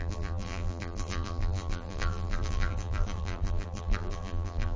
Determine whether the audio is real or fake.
fake